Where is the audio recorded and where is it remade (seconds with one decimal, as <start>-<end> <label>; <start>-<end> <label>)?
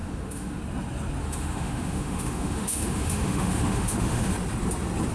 0.0-0.6 remade; 0.6-1.2 recorded; 1.2-4.3 remade; 4.3-5.1 recorded